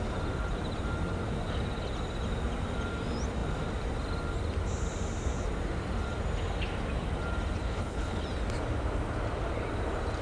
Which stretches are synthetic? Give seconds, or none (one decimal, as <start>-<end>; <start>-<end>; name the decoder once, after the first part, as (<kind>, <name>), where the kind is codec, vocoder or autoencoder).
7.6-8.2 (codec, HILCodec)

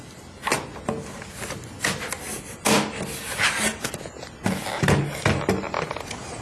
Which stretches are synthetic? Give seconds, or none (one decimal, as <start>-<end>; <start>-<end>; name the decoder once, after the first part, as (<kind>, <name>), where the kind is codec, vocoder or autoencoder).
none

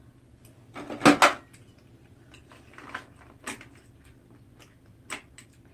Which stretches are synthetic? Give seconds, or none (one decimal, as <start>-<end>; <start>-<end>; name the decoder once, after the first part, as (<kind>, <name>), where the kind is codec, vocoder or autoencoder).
none